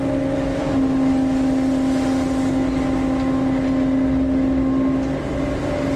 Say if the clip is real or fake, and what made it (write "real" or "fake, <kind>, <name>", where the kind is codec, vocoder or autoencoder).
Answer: real